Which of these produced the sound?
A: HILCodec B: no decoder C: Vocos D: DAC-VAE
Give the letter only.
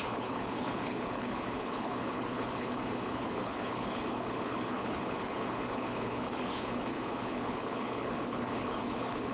A